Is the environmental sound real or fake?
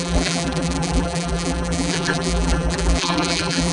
fake